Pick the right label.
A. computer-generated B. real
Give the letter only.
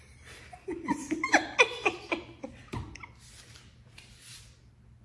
B